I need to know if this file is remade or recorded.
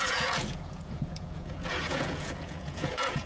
remade